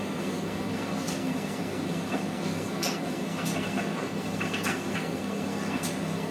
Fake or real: fake